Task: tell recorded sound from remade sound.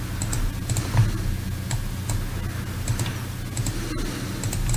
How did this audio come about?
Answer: recorded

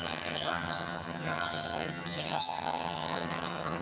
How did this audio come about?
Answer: remade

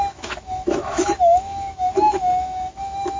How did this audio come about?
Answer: remade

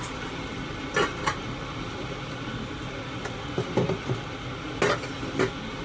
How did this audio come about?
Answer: recorded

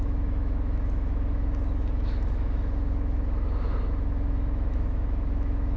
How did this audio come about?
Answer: remade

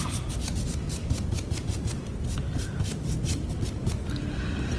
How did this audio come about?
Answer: recorded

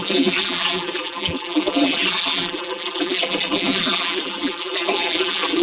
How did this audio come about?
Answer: remade